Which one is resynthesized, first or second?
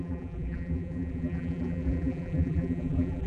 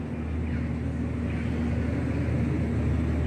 first